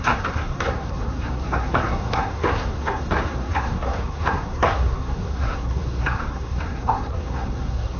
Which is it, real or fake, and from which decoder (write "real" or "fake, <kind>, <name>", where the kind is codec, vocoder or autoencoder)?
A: fake, codec, SNAC